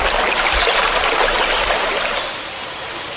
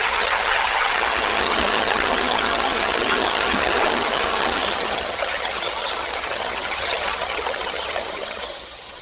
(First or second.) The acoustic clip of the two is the first